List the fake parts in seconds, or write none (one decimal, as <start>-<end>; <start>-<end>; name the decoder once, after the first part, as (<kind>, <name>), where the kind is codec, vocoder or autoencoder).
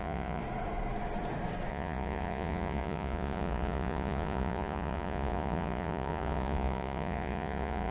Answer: 0.0-0.4 (vocoder, Vocos); 1.7-7.9